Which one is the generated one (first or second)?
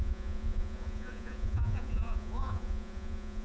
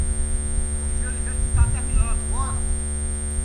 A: first